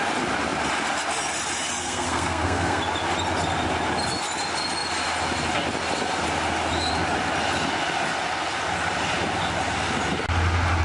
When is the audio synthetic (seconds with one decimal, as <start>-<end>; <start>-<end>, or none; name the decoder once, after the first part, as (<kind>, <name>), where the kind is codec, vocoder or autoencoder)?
1.8-2.8 (codec, SNAC)